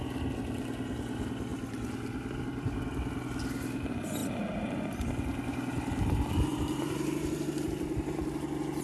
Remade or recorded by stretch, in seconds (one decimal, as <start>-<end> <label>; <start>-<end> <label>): 0.0-6.5 recorded; 6.5-8.2 remade; 8.2-8.8 recorded